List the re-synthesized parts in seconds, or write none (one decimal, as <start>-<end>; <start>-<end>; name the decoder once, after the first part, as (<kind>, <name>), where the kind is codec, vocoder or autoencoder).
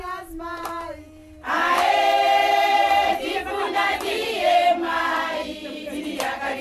2.4-5.9 (vocoder, BigVGAN v2)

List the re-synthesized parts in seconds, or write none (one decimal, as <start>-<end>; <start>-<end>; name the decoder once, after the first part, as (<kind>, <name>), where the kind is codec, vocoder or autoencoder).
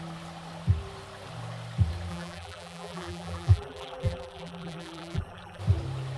2.1-5.6 (vocoder, BigVGAN v2)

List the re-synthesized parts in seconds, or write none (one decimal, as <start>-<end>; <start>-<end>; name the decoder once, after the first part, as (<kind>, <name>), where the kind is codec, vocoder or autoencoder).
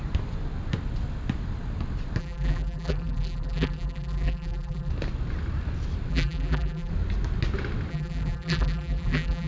2.2-4.9 (vocoder, BigVGAN v2); 6.1-6.9; 7.9-9.5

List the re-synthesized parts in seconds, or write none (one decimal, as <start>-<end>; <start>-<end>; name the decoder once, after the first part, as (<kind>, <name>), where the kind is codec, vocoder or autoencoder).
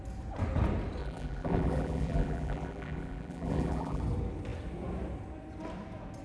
1.0-4.0 (vocoder, BigVGAN v2)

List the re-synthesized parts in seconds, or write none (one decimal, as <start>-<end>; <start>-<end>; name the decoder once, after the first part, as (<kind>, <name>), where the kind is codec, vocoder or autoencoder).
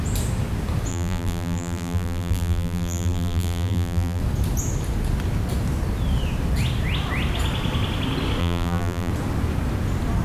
0.9-4.2 (vocoder, BigVGAN v2); 8.4-9.1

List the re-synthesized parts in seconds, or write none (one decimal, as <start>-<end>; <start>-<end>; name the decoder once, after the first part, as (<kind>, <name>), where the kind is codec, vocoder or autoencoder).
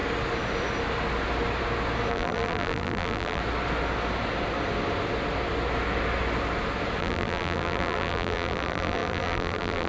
2.1-3.4 (vocoder, BigVGAN v2); 7.0-9.9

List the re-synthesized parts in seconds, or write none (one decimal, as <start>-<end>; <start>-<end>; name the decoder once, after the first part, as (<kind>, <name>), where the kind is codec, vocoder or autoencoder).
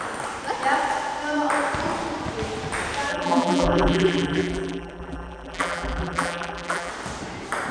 3.1-6.9 (vocoder, BigVGAN v2)